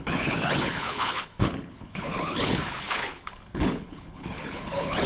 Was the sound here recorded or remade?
remade